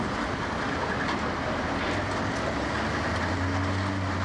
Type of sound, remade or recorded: recorded